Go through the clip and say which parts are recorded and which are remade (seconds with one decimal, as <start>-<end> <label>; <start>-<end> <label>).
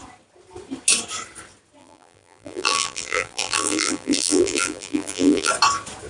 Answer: 0.0-1.8 recorded; 1.8-5.5 remade; 5.5-6.1 recorded